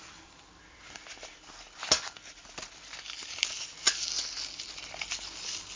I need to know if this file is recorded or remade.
recorded